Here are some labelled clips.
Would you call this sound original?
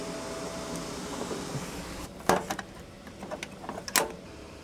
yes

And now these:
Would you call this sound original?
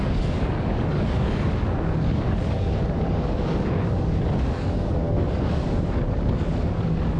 no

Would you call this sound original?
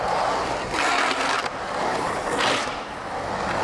yes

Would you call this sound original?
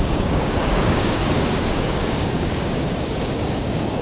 no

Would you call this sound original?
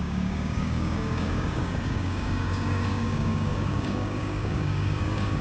no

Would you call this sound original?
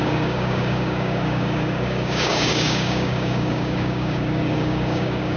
no